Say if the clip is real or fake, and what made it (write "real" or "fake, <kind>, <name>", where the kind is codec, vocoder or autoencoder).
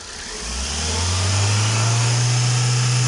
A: real